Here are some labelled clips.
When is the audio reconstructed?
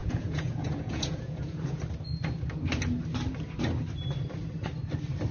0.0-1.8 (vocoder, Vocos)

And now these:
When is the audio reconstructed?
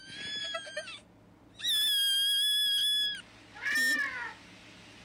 none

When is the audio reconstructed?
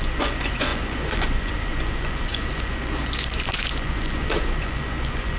0.0-5.4 (vocoder, Vocos)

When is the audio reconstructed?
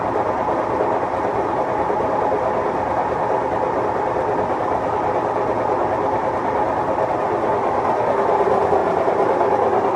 none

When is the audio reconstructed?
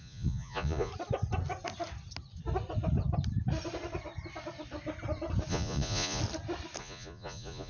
0.0-0.9 (vocoder, Vocos); 5.5-6.2; 6.8-7.7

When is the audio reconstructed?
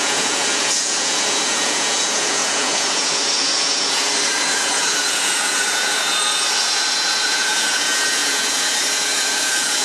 0.0-9.8 (vocoder, Vocos)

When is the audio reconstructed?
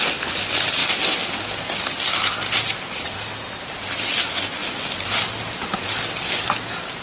none